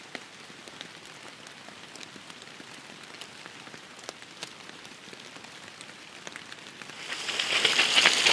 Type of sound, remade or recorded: recorded